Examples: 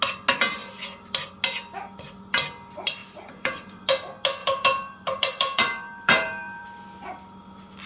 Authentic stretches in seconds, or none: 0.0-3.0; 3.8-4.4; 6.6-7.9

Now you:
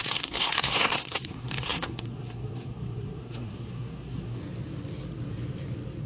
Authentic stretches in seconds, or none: 4.4-6.1

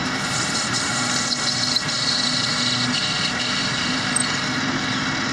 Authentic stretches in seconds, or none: 3.2-3.6; 4.1-5.3

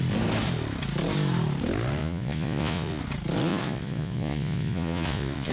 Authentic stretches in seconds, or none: 0.0-2.0; 3.0-3.5

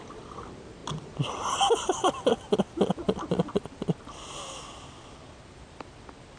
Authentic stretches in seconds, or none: 0.0-6.4